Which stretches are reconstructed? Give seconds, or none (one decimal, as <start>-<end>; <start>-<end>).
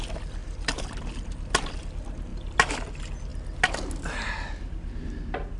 0.4-1.9; 2.3-2.9